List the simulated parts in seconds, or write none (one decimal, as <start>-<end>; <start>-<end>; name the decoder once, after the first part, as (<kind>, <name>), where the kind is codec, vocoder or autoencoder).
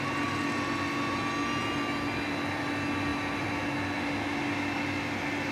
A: none